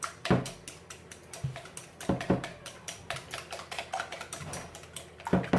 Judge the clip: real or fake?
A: real